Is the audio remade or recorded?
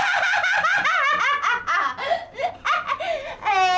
recorded